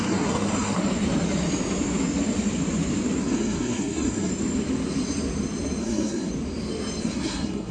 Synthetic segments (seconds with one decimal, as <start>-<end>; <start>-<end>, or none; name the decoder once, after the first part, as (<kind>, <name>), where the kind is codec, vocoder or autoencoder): 0.0-0.8 (codec, SNAC); 3.2-4.3; 5.8-6.3; 7.0-7.7